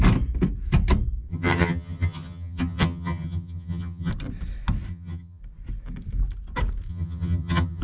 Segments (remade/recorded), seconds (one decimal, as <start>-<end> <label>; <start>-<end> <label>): 0.0-1.3 recorded; 1.3-4.1 remade; 4.1-4.9 recorded; 4.9-5.4 remade; 5.4-6.9 recorded; 6.9-7.8 remade